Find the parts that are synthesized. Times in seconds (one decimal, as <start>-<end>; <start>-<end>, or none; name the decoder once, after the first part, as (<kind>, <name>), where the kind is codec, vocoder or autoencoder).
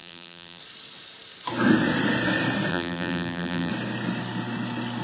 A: 0.0-0.6 (vocoder, BigVGAN v2); 2.7-3.7